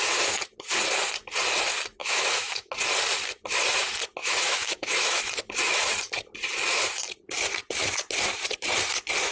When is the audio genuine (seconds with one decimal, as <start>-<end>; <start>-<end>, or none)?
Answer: 0.0-2.0; 2.7-4.2; 5.2-9.3